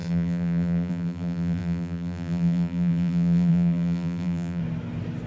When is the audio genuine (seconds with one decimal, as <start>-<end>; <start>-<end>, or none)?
4.6-5.3